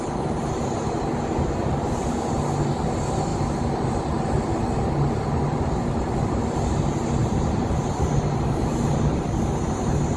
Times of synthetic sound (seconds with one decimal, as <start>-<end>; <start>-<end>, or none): 3.3-3.9; 7.2-9.2